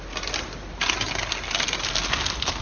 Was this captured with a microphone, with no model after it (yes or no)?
yes